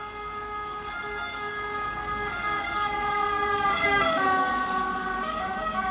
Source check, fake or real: fake